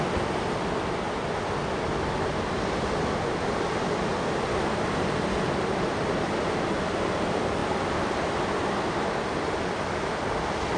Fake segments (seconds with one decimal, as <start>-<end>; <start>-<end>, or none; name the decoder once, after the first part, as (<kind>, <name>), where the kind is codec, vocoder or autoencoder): none